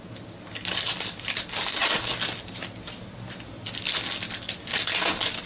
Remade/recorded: recorded